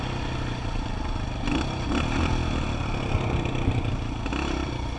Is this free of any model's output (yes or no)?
yes